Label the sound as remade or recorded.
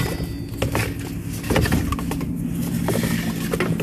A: recorded